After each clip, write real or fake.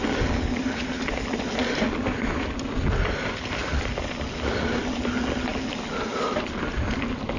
real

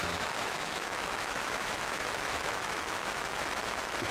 fake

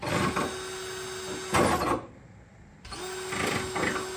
real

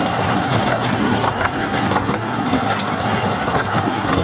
fake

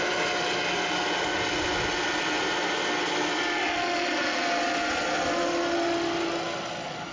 real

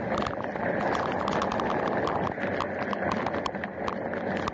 real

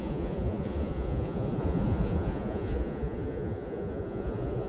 fake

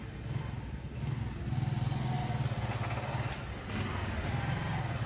real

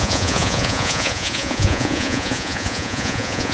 fake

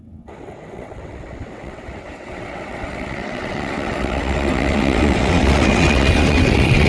fake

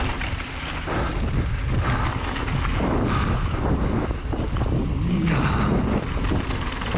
real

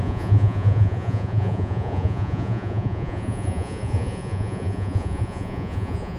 fake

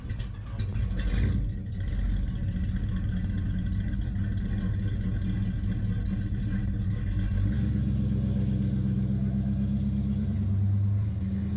real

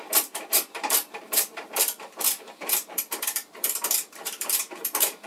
fake